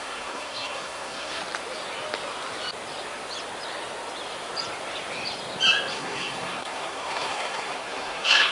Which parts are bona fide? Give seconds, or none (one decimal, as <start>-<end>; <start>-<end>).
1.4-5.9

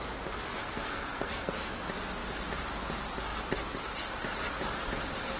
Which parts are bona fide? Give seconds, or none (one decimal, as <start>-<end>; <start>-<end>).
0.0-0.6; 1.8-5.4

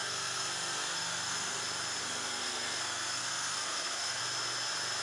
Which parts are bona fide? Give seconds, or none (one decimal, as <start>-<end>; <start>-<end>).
1.6-2.0; 4.2-5.0

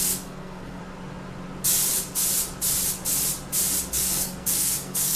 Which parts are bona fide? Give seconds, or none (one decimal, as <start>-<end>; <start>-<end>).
0.8-3.9

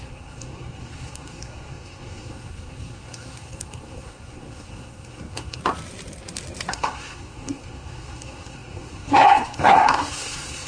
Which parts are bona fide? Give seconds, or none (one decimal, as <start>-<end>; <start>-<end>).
5.6-6.7

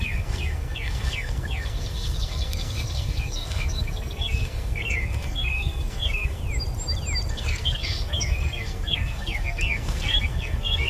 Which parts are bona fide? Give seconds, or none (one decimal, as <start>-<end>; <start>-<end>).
6.4-7.3

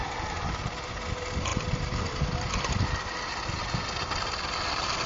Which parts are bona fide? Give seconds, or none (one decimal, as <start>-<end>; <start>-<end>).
0.0-5.1